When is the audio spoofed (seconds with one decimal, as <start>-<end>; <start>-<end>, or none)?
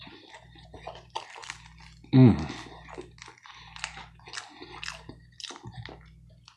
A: none